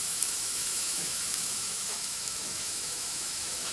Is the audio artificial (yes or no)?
yes